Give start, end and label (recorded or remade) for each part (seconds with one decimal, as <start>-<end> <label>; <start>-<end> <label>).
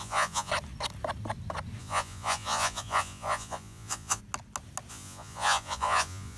0.0-0.5 remade; 0.5-1.8 recorded; 1.8-4.2 remade; 4.2-4.9 recorded; 4.9-6.4 remade